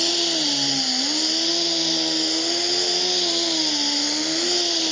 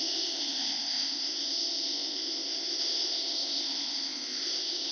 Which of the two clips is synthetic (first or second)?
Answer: second